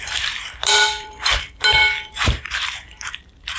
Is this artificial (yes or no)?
yes